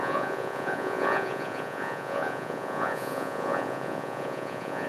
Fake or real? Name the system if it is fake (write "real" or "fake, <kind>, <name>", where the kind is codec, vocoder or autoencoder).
fake, vocoder, Vocos